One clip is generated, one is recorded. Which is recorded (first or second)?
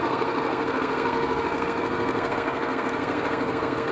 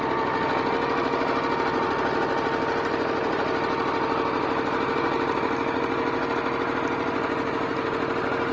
second